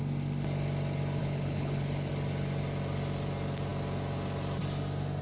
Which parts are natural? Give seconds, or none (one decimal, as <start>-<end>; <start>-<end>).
0.0-1.2; 2.1-5.2